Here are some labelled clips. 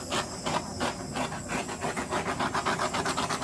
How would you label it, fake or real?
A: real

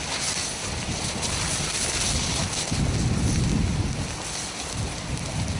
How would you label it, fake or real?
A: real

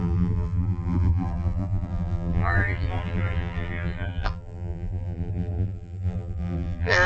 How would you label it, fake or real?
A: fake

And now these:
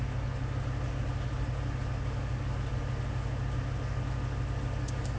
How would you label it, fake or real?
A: real